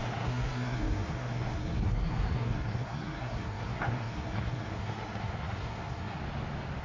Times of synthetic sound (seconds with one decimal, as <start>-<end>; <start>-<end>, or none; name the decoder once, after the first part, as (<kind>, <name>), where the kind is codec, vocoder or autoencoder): 0.0-6.2 (codec, SNAC)